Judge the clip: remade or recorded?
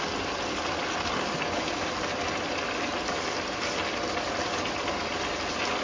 recorded